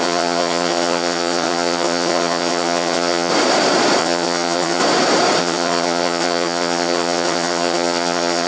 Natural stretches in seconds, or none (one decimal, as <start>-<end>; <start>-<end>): 3.3-4.0; 4.8-5.4